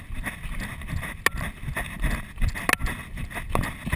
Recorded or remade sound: recorded